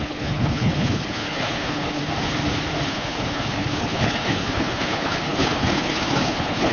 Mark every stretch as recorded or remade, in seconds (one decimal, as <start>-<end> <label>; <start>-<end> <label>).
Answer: 0.0-2.0 remade; 2.0-2.9 recorded; 2.9-6.7 remade